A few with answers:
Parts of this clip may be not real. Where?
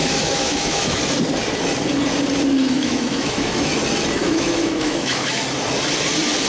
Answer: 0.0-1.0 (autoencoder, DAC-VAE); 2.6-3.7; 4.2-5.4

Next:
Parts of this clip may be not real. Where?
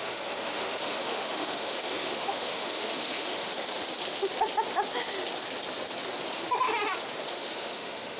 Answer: 0.0-3.5 (autoencoder, DAC-VAE); 7.3-8.2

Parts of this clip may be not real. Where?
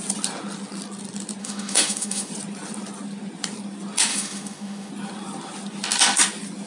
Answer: 1.4-2.3 (autoencoder, DAC-VAE); 4.1-4.9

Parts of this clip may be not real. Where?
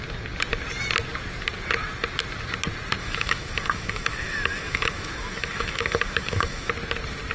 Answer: 3.0-6.7 (autoencoder, DAC-VAE)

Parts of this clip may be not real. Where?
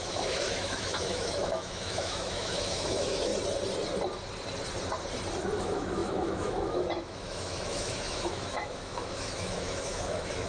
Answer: 0.0-3.3 (autoencoder, DAC-VAE); 5.6-10.5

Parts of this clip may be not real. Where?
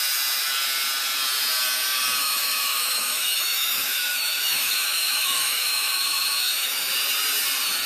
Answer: 2.2-6.9 (autoencoder, DAC-VAE)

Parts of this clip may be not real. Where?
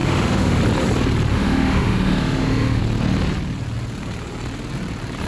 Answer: 0.0-0.6 (autoencoder, DAC-VAE); 1.3-2.8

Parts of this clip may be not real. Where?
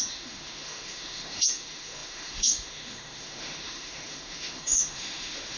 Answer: 0.0-5.6 (autoencoder, DAC-VAE)